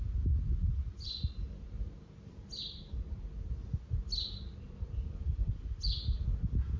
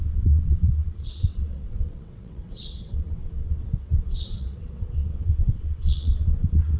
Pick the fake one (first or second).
second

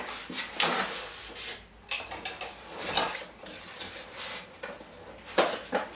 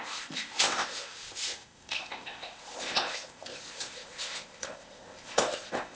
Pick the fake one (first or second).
second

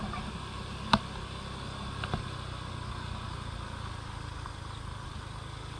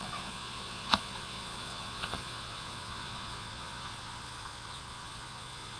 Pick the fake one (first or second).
second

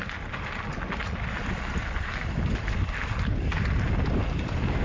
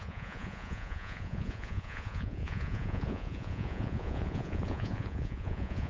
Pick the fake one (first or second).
second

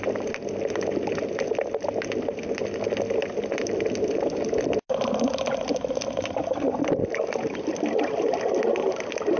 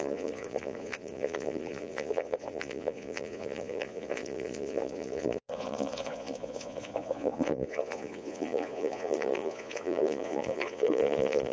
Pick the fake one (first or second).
second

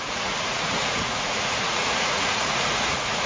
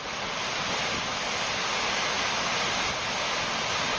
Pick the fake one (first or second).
first